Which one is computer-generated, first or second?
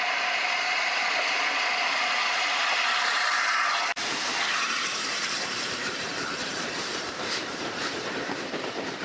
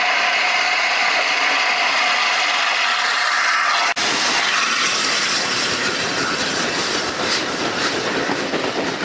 first